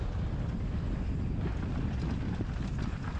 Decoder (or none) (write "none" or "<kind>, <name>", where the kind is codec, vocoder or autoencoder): none